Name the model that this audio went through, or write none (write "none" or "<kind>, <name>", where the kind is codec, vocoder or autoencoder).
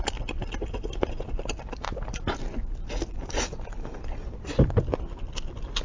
none